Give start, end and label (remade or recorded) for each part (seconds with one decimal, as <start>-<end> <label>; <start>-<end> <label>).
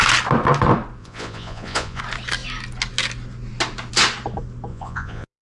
0.0-1.0 recorded; 1.0-2.0 remade; 2.0-4.7 recorded; 4.7-5.4 remade